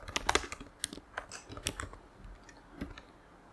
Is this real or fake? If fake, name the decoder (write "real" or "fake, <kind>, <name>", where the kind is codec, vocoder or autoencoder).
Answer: real